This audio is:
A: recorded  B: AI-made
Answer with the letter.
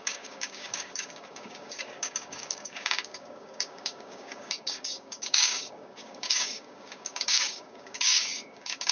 B